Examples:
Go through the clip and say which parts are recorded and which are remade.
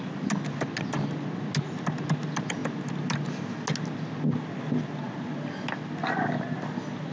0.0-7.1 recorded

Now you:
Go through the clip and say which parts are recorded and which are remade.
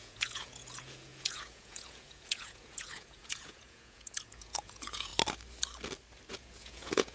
0.0-5.1 remade; 5.1-6.3 recorded; 6.3-7.1 remade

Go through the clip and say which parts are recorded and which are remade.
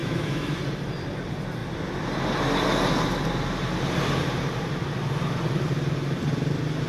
0.0-0.6 remade; 0.6-6.9 recorded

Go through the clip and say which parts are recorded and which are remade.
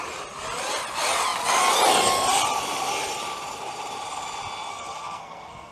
0.0-4.7 recorded; 4.7-5.7 remade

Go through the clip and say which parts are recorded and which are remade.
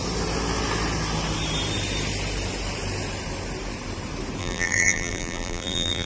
0.0-4.4 recorded; 4.4-6.1 remade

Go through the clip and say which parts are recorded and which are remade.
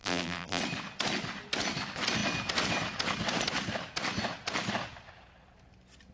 0.0-0.6 remade; 0.6-6.1 recorded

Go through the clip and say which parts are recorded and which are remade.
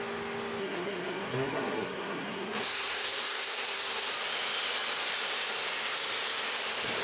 0.0-0.6 recorded; 0.6-4.1 remade; 4.1-7.0 recorded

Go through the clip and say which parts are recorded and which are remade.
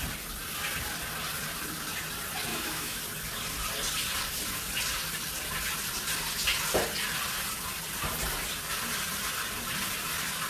0.0-2.5 recorded; 2.5-3.0 remade; 3.0-10.5 recorded